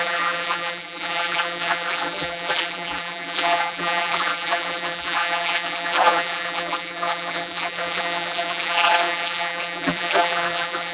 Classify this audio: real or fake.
fake